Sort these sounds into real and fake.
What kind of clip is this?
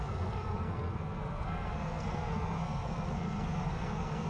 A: fake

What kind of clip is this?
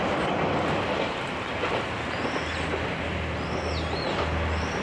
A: real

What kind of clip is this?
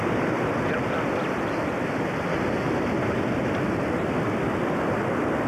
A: fake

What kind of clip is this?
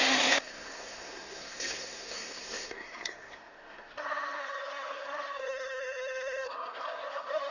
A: fake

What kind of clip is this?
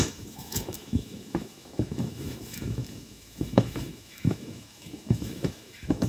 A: fake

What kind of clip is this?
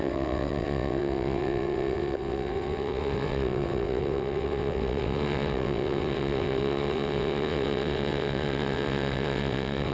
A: fake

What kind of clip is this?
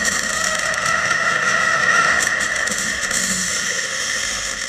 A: fake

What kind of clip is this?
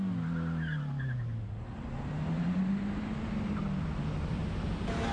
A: real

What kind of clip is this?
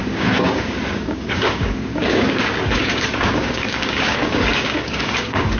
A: fake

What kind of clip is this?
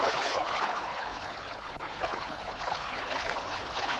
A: fake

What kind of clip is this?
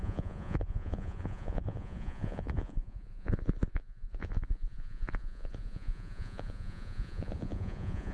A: fake